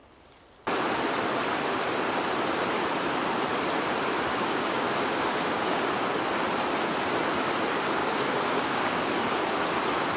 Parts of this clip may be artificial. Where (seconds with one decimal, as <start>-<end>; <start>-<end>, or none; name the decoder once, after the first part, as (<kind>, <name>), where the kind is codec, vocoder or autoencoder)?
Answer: 4.3-5.8 (codec, DAC); 8.0-9.2